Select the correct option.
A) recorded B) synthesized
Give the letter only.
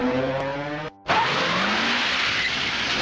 A